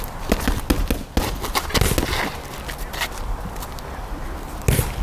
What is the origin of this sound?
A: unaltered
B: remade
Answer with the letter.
A